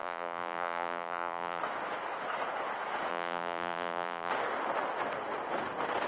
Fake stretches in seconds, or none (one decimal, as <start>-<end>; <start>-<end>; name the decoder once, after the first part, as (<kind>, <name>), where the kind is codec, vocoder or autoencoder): 0.0-1.6 (vocoder, BigVGAN v2); 3.1-4.3